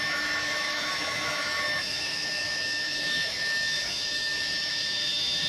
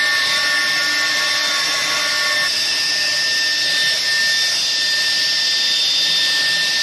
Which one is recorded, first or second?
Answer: second